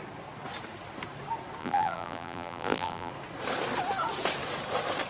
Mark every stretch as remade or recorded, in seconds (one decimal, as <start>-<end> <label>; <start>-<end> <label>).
0.0-1.6 recorded; 1.6-3.1 remade; 3.1-5.1 recorded